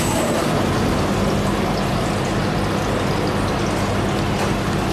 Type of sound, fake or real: real